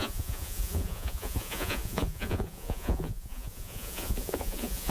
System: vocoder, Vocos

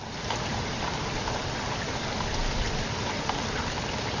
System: none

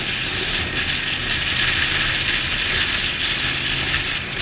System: none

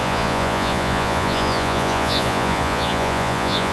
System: vocoder, Vocos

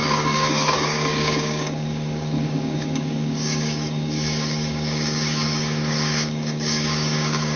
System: codec, DAC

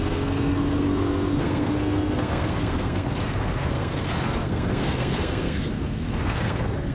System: codec, SNAC